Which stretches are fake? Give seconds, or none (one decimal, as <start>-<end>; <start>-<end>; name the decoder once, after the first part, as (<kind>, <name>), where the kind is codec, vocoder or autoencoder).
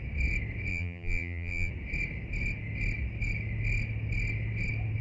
0.7-1.7 (vocoder, BigVGAN v2)